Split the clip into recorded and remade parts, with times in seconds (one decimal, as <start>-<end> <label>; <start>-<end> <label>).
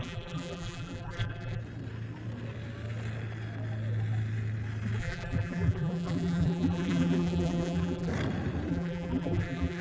0.0-1.6 remade; 1.6-5.0 recorded; 5.0-8.1 remade; 8.1-8.7 recorded; 8.7-9.8 remade